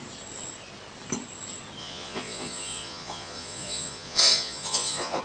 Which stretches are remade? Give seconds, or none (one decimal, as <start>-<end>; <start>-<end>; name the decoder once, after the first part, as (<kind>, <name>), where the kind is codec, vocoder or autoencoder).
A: 1.8-5.2 (vocoder, Vocos)